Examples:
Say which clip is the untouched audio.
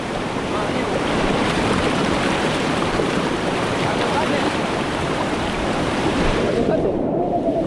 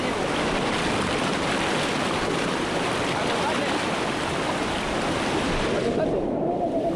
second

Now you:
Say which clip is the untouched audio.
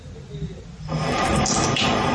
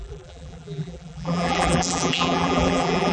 first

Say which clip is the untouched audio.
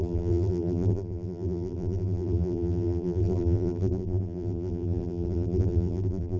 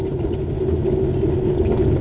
second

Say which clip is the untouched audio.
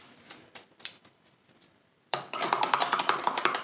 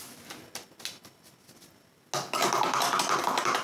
second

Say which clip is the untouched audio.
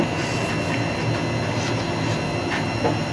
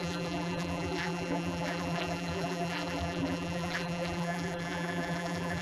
first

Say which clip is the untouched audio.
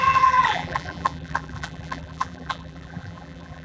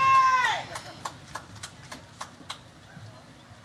second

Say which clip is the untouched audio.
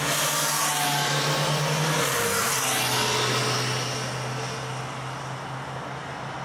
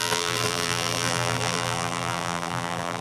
first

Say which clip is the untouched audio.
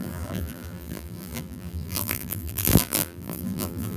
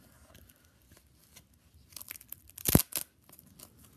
second